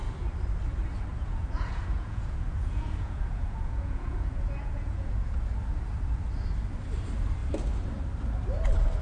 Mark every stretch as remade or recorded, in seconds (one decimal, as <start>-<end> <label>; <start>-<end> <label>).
0.0-1.1 recorded; 1.1-5.4 remade; 5.4-9.0 recorded